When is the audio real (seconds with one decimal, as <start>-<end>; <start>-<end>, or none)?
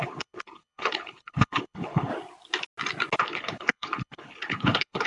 2.1-3.2